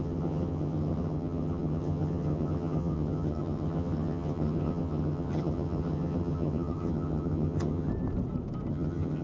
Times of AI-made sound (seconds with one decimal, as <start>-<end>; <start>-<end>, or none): 0.0-7.9; 8.7-9.2